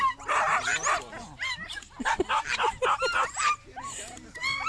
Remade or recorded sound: recorded